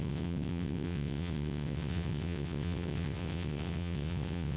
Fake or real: fake